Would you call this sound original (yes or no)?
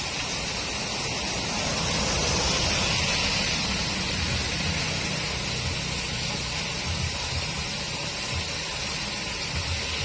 yes